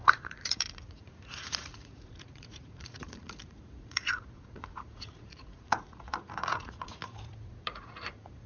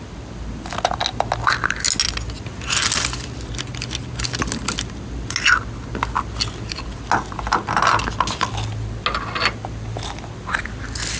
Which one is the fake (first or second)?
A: first